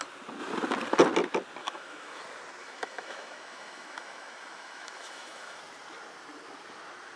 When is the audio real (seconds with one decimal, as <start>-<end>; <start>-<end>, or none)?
0.0-1.6; 2.2-2.6; 5.6-7.2